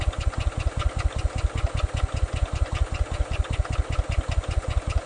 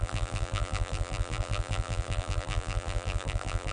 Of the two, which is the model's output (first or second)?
second